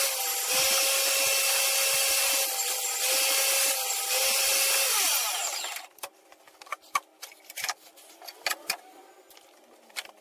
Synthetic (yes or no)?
no